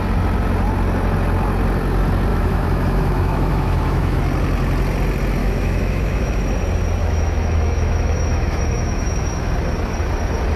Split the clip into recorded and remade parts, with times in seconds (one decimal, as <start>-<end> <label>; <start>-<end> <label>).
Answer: 0.0-2.3 recorded; 2.3-4.2 remade; 4.2-5.4 recorded; 5.4-6.4 remade; 6.4-7.0 recorded; 7.0-9.5 remade; 9.5-10.6 recorded